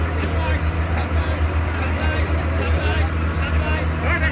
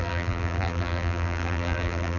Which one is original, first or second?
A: first